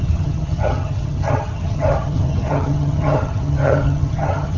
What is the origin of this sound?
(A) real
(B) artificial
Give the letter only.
B